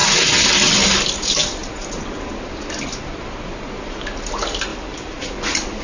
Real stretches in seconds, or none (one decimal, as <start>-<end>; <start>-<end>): 0.0-4.7